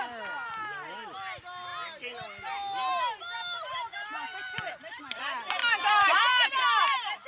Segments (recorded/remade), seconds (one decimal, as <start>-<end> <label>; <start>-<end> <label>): 0.0-5.6 recorded; 5.6-6.2 remade; 6.2-7.3 recorded